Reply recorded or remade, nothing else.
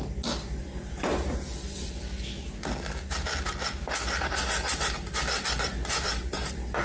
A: recorded